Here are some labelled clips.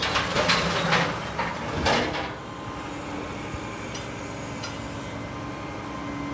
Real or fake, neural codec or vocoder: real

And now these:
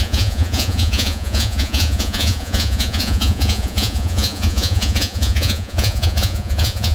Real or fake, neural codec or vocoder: fake, vocoder, Vocos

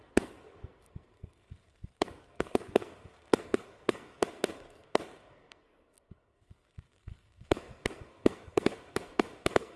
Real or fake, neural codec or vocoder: fake, codec, SNAC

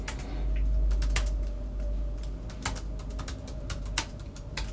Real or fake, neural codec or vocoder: real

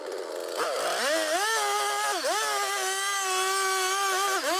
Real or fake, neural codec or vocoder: real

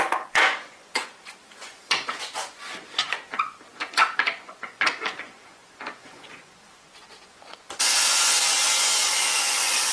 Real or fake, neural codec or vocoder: fake, vocoder, Vocos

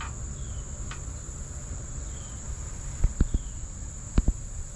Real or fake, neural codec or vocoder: real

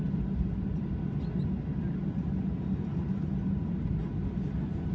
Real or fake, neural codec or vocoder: real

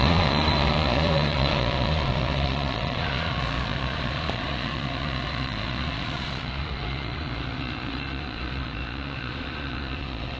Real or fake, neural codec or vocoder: fake, vocoder, Vocos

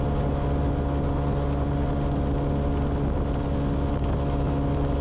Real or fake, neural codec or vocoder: real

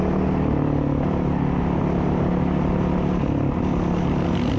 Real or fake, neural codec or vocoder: real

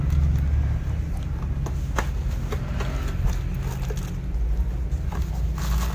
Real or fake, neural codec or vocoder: real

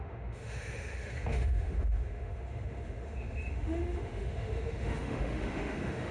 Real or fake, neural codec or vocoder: fake, autoencoder, DAC-VAE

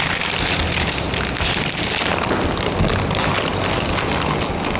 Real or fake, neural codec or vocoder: real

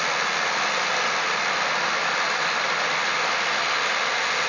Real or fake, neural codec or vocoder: real